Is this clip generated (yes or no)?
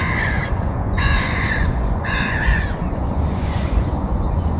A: yes